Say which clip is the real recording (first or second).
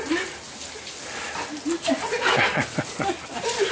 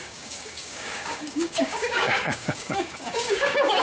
first